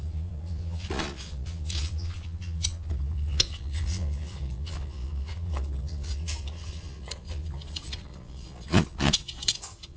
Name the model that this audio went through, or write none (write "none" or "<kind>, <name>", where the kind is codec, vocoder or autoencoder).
vocoder, Vocos